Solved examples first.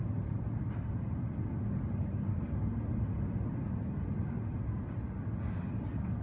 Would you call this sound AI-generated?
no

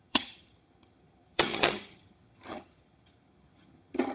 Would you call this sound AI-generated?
yes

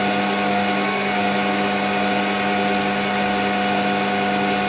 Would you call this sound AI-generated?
no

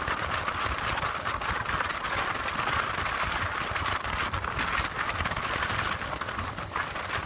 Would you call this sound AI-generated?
no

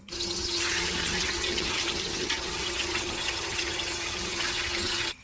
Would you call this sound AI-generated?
yes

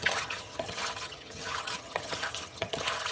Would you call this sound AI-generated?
yes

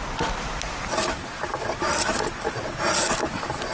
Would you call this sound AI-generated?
no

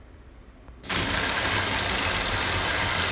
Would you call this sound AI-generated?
no